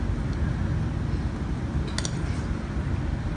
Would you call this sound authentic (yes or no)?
yes